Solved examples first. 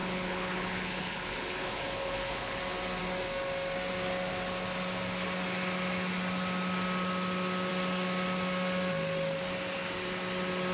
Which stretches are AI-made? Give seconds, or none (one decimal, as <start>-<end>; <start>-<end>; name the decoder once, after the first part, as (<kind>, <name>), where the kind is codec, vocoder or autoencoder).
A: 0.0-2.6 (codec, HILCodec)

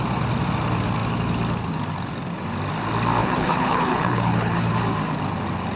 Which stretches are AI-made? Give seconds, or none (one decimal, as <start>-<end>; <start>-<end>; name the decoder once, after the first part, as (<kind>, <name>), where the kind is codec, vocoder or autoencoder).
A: 3.2-4.8 (codec, HILCodec)

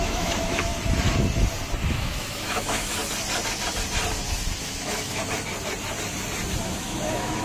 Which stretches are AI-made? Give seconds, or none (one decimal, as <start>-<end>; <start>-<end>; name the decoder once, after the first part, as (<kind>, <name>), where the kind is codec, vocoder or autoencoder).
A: 0.0-0.7 (autoencoder, DAC-VAE); 1.9-3.0; 4.6-5.2; 6.6-7.4

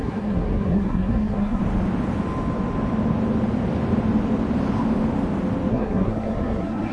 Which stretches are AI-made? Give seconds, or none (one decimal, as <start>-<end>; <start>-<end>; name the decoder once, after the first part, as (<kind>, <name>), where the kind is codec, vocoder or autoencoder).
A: 0.0-1.6 (codec, SNAC); 5.7-6.9

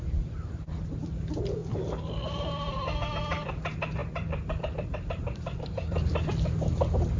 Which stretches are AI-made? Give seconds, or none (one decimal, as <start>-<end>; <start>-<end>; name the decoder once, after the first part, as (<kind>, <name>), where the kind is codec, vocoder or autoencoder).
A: 0.0-1.6 (vocoder, BigVGAN v2); 3.2-7.2

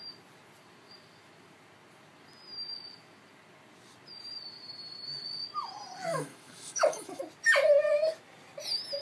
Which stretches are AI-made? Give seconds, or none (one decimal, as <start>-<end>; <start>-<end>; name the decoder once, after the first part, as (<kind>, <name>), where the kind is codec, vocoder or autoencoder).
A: 6.1-7.2 (autoencoder, DAC-VAE)